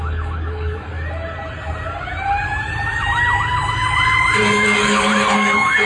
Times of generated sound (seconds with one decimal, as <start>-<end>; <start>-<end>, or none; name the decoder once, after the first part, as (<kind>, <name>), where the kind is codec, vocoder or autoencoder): 0.0-0.9 (codec, DAC); 4.4-5.9